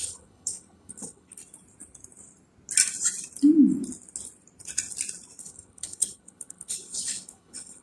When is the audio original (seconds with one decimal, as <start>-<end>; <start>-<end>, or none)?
1.4-5.4